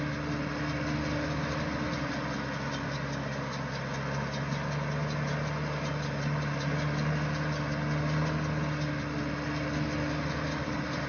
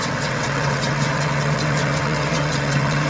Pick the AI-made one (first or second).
second